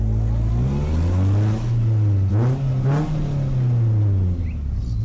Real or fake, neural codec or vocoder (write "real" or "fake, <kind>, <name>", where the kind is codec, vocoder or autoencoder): real